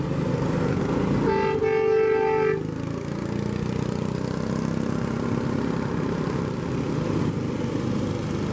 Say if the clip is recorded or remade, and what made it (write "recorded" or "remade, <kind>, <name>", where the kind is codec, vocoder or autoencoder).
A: recorded